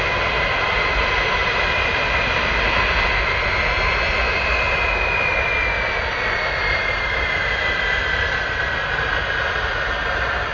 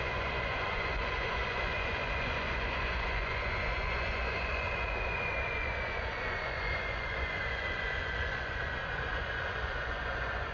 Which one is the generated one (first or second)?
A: second